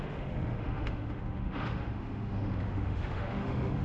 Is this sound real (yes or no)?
no